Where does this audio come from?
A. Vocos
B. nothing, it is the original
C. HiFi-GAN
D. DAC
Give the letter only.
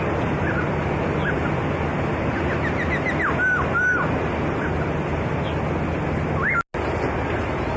B